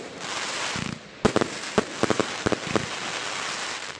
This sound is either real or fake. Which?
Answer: real